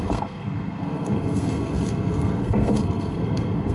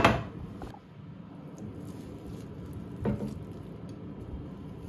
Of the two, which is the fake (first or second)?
first